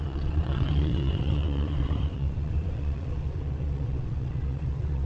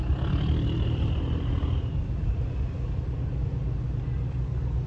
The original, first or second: second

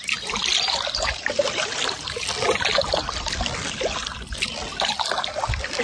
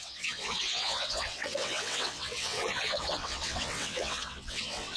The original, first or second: first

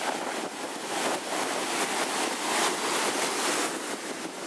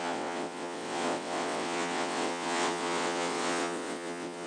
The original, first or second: first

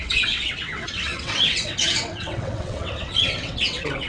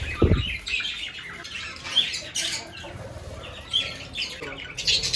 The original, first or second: second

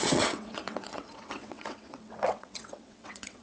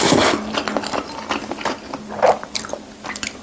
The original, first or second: second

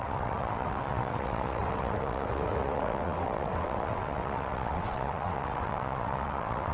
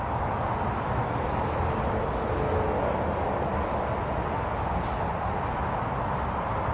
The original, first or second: second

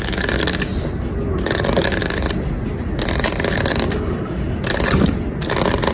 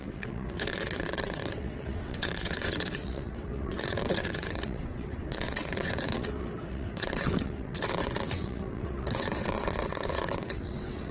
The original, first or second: first